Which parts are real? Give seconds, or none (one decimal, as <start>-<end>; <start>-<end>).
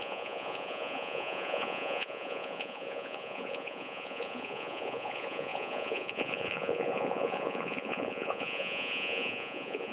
none